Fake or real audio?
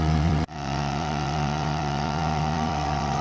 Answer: fake